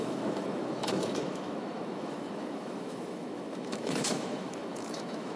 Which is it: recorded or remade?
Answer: remade